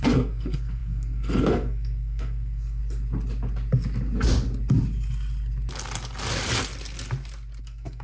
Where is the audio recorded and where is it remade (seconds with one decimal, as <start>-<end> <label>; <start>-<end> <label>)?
0.0-2.8 remade; 2.8-7.6 recorded; 7.6-8.0 remade